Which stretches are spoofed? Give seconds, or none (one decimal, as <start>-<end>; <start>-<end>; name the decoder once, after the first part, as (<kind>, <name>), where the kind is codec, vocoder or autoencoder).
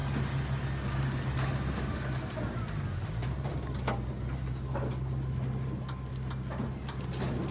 none